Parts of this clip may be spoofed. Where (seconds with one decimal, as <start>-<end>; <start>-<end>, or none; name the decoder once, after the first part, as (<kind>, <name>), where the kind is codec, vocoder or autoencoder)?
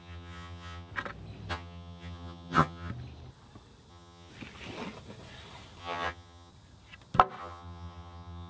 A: 0.0-0.9 (vocoder, HiFi-GAN); 1.5-2.9; 3.9-4.3; 5.8-6.5; 7.4-8.5